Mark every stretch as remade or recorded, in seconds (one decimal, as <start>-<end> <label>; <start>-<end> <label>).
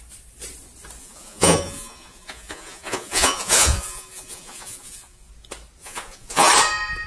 0.0-1.0 recorded; 1.0-5.3 remade; 5.3-5.8 recorded; 5.8-6.5 remade; 6.5-7.1 recorded